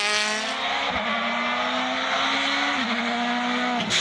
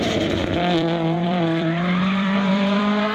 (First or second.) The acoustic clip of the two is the first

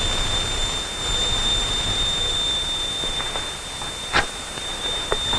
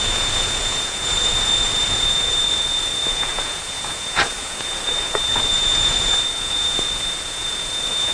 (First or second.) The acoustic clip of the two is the first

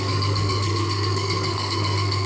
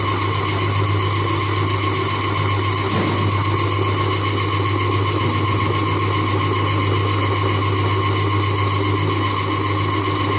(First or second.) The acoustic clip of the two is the second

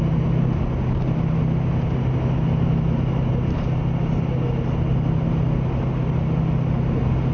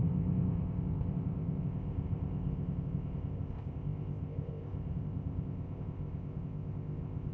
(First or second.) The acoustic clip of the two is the first